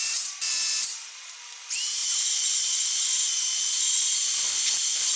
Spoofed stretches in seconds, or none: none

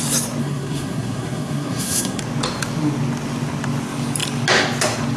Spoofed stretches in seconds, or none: 0.4-2.2

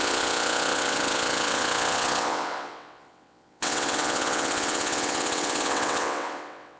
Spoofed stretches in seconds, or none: 0.0-6.8

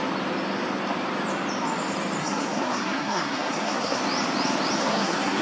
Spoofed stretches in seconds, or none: 2.2-4.0; 4.8-5.4